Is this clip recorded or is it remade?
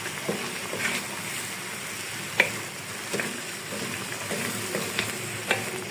recorded